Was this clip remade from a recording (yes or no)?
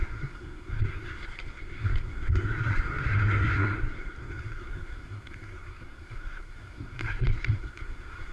yes